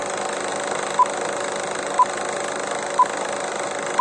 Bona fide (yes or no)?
yes